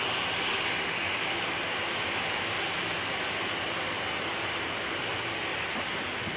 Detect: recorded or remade recorded